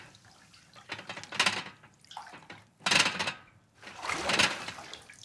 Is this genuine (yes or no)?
yes